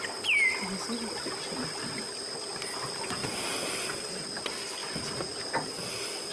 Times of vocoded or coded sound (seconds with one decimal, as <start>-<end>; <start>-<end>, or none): 3.2-3.7; 4.8-5.4